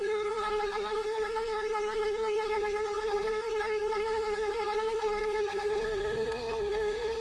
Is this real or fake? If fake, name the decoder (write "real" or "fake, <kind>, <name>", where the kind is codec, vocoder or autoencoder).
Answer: fake, codec, SNAC